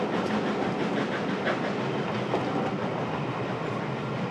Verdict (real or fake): real